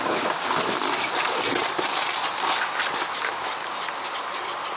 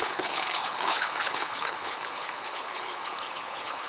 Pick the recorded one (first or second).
first